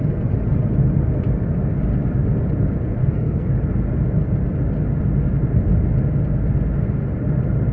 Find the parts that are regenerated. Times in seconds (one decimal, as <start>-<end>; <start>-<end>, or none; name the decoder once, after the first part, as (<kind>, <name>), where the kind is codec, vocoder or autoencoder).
3.0-3.5 (codec, SNAC)